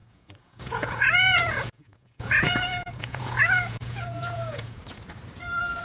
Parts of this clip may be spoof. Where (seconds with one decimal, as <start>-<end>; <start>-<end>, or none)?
0.0-4.8